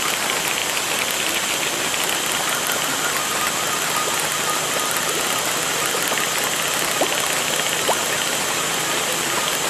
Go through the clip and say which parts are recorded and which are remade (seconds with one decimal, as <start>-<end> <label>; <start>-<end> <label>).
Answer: 0.0-9.7 recorded